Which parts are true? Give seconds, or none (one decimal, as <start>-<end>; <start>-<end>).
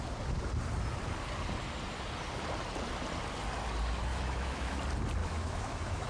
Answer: 0.0-4.1; 4.8-5.2